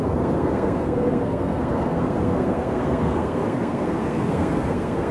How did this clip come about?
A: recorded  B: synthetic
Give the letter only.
B